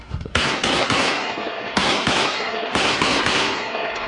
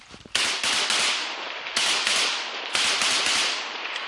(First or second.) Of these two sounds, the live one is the second